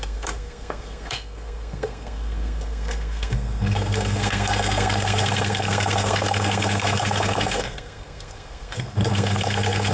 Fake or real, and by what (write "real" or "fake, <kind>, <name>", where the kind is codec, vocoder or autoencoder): fake, codec, SNAC